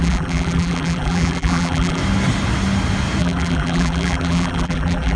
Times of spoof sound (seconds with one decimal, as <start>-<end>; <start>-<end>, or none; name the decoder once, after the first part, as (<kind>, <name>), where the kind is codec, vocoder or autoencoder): 0.0-2.0 (vocoder, BigVGAN v2); 3.2-5.2